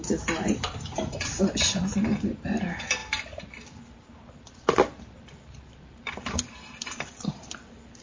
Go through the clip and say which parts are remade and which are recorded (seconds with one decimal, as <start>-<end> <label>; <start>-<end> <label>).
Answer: 0.0-0.9 recorded; 0.9-1.8 remade; 1.8-3.0 recorded; 3.0-7.3 remade; 7.3-8.0 recorded